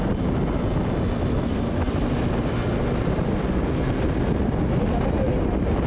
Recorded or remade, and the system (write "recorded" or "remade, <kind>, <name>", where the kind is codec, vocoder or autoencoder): recorded